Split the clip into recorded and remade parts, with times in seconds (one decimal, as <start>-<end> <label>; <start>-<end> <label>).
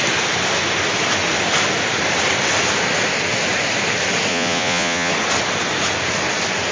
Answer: 0.0-4.3 recorded; 4.3-5.1 remade; 5.1-6.7 recorded